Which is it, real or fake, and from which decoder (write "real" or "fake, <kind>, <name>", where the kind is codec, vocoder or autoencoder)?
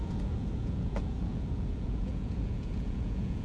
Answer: fake, vocoder, Vocos